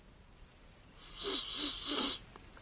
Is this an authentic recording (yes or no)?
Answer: yes